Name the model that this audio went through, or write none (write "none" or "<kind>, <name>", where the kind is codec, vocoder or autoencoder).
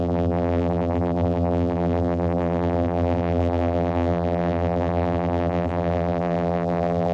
vocoder, BigVGAN v2